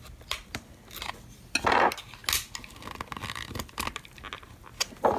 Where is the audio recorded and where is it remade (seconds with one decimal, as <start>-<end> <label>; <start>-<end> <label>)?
0.0-5.2 recorded